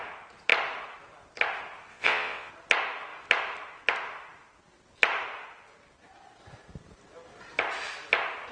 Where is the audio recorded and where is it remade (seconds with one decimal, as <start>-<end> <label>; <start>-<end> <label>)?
0.0-1.9 recorded; 1.9-2.5 remade; 2.5-8.5 recorded